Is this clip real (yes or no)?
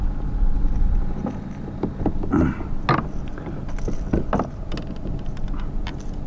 yes